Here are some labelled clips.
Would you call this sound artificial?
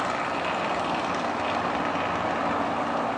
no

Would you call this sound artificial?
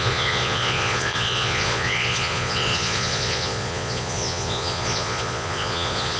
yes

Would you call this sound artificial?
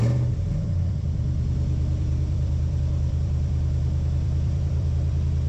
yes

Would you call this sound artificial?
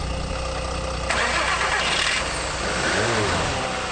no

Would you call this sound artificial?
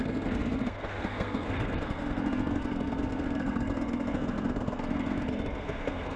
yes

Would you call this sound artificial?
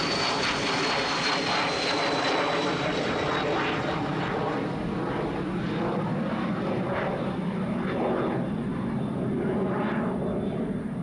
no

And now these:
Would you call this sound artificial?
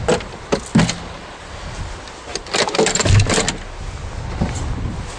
no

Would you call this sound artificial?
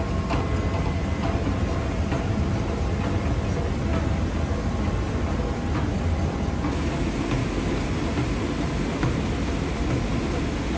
no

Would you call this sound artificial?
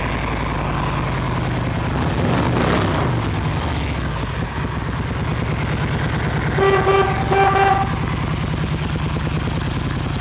no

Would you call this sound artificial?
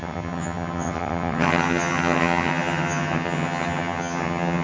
yes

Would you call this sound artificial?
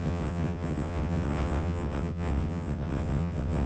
yes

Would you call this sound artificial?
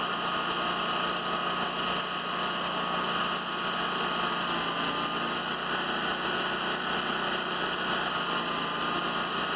no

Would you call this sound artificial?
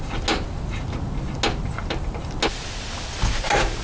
no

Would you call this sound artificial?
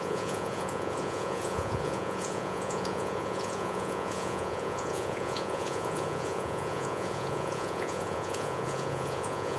yes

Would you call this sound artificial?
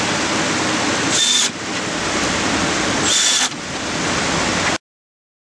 no